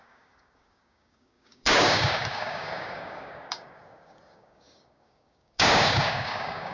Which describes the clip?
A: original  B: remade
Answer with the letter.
B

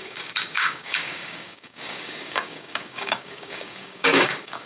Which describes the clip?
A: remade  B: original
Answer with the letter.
A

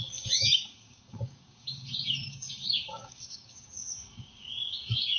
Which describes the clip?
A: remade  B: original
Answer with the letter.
A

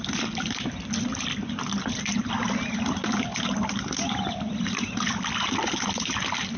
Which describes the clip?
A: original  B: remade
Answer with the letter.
A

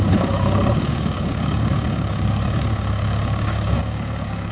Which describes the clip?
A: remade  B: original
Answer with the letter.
A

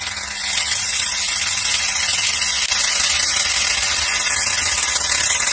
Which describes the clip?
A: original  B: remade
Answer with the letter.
A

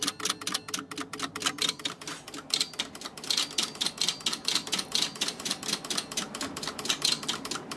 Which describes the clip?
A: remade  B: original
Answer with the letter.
B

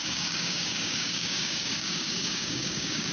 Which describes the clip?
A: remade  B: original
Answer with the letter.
A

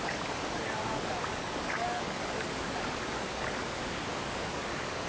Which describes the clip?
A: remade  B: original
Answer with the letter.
A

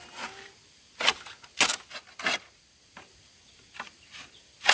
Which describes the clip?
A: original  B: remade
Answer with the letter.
A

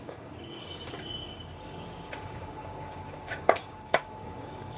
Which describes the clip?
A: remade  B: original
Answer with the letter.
A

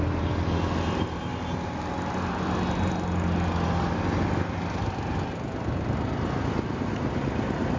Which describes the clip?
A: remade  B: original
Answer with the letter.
B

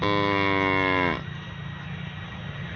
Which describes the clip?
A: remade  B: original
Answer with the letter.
B